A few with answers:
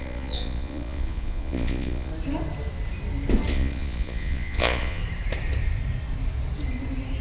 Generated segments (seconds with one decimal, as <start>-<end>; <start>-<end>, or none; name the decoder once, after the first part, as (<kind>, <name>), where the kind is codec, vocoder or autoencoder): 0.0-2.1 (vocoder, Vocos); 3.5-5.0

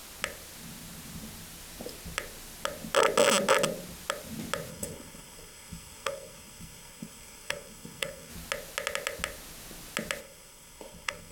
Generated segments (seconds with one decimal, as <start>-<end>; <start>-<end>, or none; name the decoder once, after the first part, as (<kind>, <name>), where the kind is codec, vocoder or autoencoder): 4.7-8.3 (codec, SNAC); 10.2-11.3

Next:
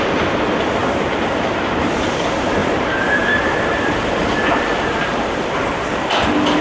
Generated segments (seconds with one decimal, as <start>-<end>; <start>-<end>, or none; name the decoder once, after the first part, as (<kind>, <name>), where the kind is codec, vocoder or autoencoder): 0.8-1.8 (vocoder, BigVGAN v2); 2.6-3.5; 4.7-5.4